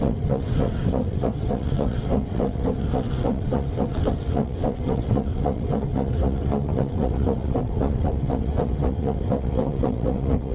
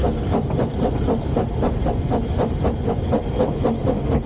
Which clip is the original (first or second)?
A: second